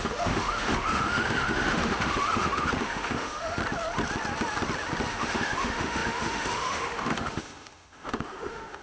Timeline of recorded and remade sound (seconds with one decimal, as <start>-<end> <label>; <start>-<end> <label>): 0.0-3.6 remade; 3.6-5.1 recorded; 5.1-8.8 remade

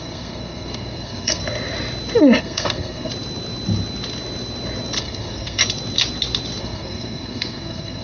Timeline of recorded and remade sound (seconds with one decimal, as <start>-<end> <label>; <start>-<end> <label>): 0.0-1.4 remade; 1.4-2.4 recorded; 2.4-3.1 remade; 3.1-5.0 recorded; 5.0-5.6 remade; 5.6-6.6 recorded; 6.6-8.0 remade

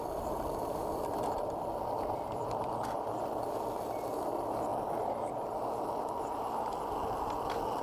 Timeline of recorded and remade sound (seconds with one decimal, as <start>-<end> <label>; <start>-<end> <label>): 0.0-7.8 recorded

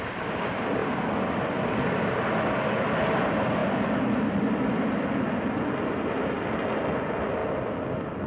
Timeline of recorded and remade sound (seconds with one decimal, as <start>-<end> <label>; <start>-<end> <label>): 0.0-8.3 recorded